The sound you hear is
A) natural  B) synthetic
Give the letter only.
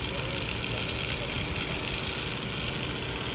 A